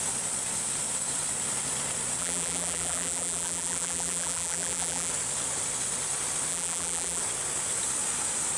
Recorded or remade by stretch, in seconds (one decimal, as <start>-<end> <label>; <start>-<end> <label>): 0.0-2.2 recorded; 2.2-5.1 remade; 5.1-6.5 recorded; 6.5-7.2 remade; 7.2-8.6 recorded

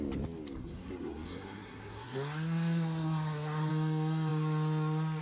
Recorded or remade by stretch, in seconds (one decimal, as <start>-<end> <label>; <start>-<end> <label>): 0.0-0.6 recorded; 0.6-3.7 remade; 3.7-5.2 recorded